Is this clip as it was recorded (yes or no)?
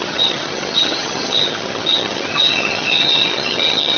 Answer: no